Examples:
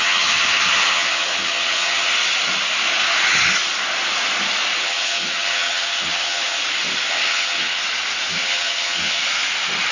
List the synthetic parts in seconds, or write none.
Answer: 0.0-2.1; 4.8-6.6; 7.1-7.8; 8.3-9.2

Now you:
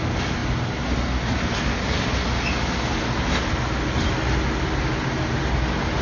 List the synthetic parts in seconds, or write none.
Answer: none

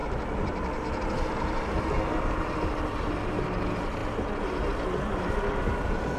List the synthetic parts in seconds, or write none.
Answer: none